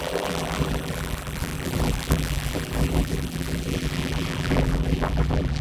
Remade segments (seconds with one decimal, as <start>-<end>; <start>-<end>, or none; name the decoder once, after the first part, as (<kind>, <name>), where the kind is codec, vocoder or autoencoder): 0.0-5.6 (vocoder, BigVGAN v2)